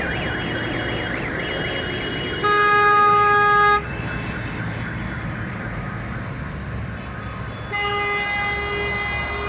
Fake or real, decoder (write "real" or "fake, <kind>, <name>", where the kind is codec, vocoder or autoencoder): real